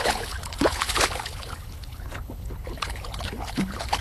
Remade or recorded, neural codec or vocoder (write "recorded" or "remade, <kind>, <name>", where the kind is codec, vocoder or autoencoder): remade, codec, HILCodec